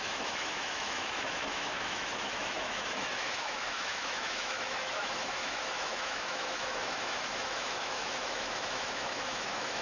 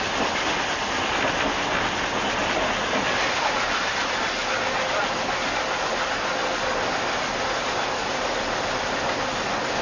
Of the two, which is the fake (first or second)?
first